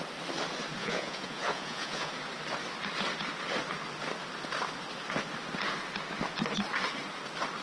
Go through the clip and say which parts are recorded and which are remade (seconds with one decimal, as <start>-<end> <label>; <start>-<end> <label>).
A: 0.0-0.8 recorded; 0.8-2.1 remade; 2.1-7.6 recorded